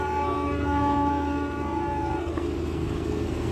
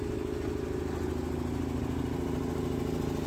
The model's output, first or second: first